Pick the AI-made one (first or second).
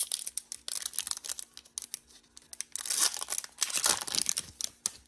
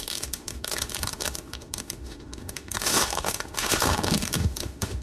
second